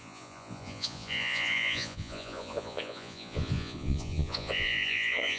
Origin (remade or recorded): remade